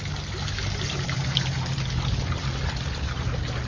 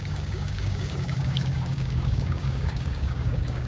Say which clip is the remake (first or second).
second